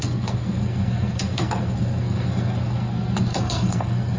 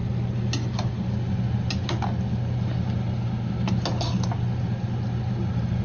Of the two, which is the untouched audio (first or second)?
second